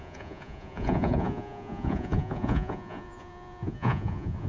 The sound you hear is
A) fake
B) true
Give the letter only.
A